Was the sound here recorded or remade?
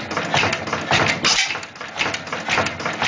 recorded